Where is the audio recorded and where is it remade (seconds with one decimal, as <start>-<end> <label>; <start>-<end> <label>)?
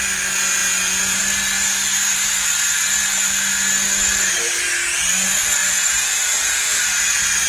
0.0-0.6 recorded; 0.6-1.2 remade; 1.2-5.6 recorded; 5.6-6.8 remade; 6.8-7.5 recorded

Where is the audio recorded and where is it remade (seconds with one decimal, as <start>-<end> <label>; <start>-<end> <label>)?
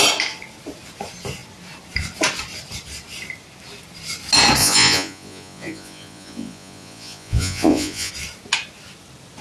0.0-4.6 recorded; 4.6-8.1 remade; 8.1-9.4 recorded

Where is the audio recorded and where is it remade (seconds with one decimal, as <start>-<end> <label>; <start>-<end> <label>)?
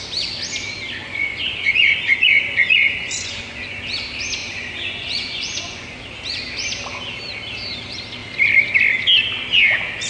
0.0-1.0 recorded; 1.0-3.8 remade; 3.8-4.4 recorded; 4.4-6.0 remade; 6.0-10.1 recorded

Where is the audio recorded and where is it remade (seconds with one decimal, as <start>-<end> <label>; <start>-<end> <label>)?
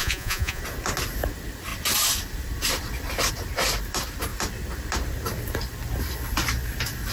0.0-0.6 remade; 0.6-7.1 recorded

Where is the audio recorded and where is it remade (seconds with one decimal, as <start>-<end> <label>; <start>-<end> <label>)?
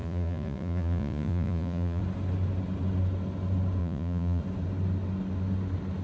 0.0-2.0 remade; 2.0-3.8 recorded; 3.8-4.4 remade; 4.4-6.0 recorded